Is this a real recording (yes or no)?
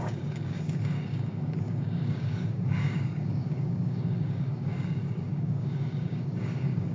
no